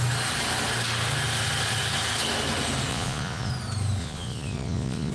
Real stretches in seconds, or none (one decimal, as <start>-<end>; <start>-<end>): 0.0-2.9; 3.5-4.0